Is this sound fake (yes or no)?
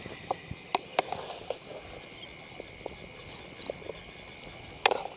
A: no